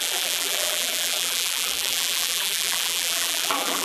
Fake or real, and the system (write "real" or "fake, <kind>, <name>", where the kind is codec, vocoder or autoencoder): fake, vocoder, BigVGAN v2